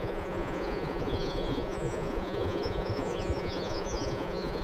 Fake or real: fake